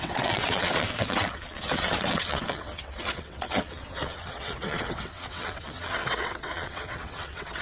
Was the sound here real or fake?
fake